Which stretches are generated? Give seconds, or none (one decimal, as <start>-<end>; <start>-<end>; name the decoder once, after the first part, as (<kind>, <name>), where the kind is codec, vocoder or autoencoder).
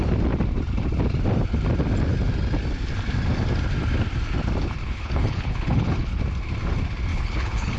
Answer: 4.8-6.2 (codec, HILCodec); 7.1-7.8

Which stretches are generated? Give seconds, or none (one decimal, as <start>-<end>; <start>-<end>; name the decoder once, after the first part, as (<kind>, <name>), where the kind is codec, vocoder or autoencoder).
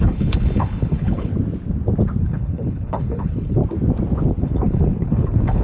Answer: 0.0-1.3 (codec, HILCodec); 2.2-3.6; 4.4-5.6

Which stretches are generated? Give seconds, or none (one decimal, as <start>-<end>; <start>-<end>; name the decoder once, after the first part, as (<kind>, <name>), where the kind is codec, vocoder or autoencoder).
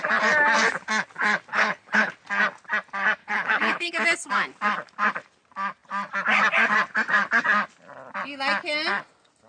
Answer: 1.5-2.1 (codec, HILCodec); 3.2-3.9